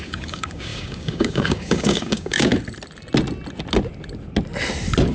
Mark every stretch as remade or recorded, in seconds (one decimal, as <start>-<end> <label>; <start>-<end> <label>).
0.0-2.5 remade; 2.5-5.1 recorded